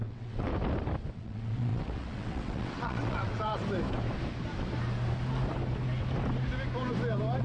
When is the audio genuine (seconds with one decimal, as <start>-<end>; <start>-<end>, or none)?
0.5-1.1; 3.6-7.4